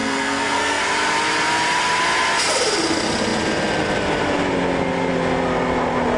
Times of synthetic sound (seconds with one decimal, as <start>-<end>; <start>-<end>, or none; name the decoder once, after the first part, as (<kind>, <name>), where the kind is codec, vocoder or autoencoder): 0.0-0.8 (codec, SNAC)